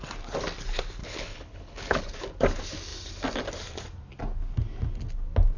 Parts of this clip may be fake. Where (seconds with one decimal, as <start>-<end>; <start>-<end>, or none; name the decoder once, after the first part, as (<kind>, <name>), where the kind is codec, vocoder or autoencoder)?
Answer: 1.0-2.0 (codec, HILCodec)